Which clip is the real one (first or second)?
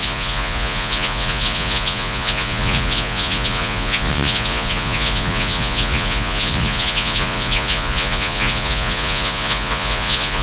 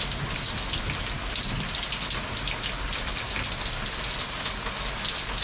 second